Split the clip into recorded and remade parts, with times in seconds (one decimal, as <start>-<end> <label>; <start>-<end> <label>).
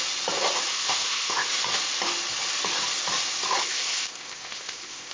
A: 0.0-0.7 recorded; 0.7-1.5 remade; 1.5-3.6 recorded; 3.6-5.1 remade